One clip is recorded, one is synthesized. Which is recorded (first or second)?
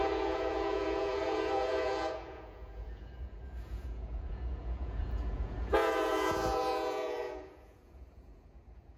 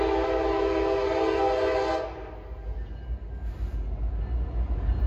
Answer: second